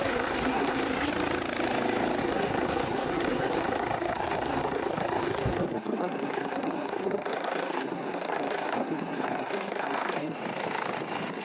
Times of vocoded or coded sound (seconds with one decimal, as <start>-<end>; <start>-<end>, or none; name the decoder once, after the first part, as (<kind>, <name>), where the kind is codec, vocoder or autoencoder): 0.0-1.1 (codec, SNAC); 2.2-10.4